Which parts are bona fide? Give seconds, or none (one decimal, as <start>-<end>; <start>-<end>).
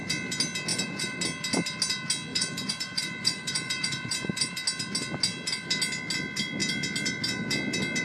0.0-0.7; 1.2-2.3; 4.5-8.0